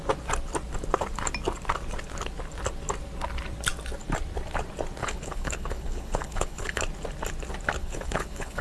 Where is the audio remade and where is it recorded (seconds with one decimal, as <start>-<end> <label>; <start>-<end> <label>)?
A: 0.0-5.0 recorded; 5.0-6.8 remade; 6.8-7.8 recorded; 7.8-8.6 remade

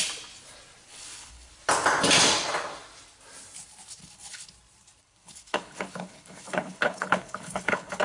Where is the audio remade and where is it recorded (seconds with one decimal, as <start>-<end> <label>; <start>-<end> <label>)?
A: 0.0-0.9 recorded; 0.9-1.5 remade; 1.5-4.0 recorded; 4.0-4.5 remade; 4.5-5.0 recorded; 5.0-8.0 remade

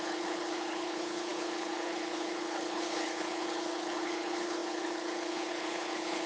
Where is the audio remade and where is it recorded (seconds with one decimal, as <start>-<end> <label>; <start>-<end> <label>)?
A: 0.0-6.3 remade

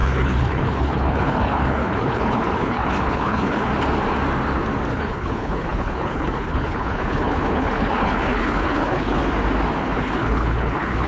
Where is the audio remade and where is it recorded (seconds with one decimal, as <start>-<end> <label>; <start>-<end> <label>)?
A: 0.0-3.7 remade; 3.7-4.9 recorded; 4.9-9.2 remade; 9.2-9.8 recorded; 9.8-11.1 remade

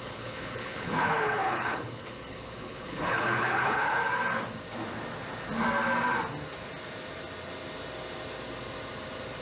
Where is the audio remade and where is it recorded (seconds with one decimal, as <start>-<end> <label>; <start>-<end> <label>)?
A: 0.0-4.0 remade; 4.0-9.4 recorded